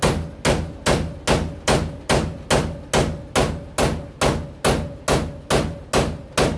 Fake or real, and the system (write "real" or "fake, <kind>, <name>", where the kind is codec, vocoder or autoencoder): real